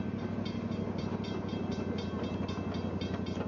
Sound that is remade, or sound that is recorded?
recorded